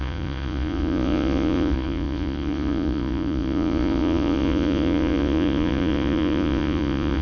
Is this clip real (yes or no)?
no